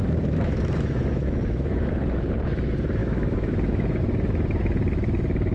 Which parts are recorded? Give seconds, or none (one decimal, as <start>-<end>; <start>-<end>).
1.9-3.0; 4.0-5.5